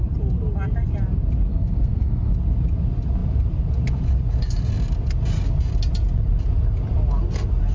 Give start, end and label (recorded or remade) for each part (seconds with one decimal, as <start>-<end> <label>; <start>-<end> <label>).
0.0-1.5 recorded; 1.5-2.3 remade; 2.3-7.7 recorded